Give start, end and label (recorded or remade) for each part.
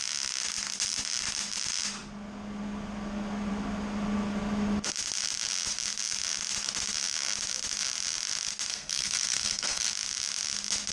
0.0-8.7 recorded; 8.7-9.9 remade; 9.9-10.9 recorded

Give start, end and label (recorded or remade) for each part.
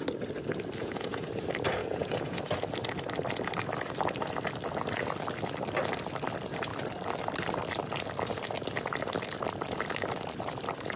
0.0-0.8 recorded; 0.8-1.3 remade; 1.3-1.8 recorded; 1.8-2.4 remade; 2.4-11.0 recorded